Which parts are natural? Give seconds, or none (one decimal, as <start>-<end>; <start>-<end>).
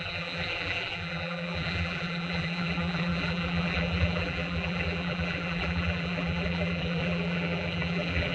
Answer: none